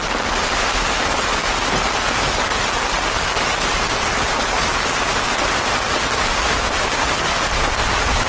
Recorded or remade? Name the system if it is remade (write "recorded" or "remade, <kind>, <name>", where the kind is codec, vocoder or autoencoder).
recorded